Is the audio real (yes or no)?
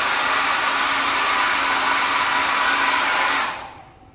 yes